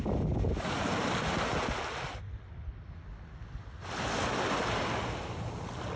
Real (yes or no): yes